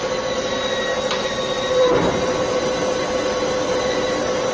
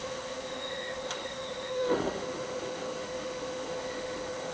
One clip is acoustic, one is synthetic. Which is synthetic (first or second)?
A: second